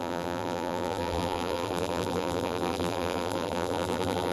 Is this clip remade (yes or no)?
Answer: yes